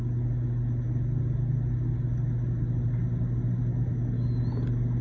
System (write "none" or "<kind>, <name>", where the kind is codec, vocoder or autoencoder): none